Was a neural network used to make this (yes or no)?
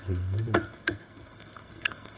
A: yes